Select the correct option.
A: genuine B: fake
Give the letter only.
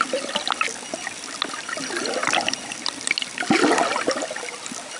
A